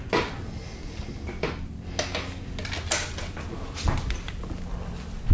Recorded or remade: recorded